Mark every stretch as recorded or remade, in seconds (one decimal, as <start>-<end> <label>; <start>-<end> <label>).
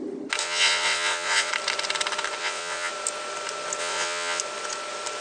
0.0-0.4 recorded; 0.4-1.5 remade; 1.5-2.4 recorded; 2.4-2.9 remade; 2.9-3.8 recorded; 3.8-4.4 remade; 4.4-5.2 recorded